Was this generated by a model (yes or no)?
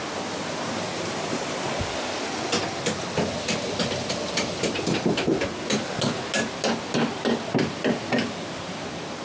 no